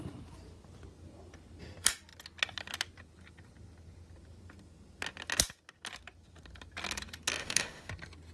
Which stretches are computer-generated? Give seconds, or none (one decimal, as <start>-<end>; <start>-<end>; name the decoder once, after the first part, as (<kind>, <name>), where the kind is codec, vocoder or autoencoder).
7.4-7.9 (autoencoder, DAC-VAE)